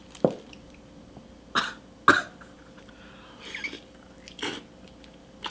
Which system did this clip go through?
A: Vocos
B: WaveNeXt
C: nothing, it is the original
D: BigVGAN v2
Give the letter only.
C